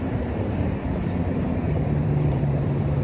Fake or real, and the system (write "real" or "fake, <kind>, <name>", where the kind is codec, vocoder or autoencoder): fake, vocoder, BigVGAN v2